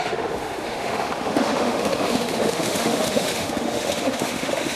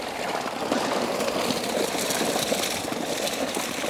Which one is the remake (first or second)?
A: first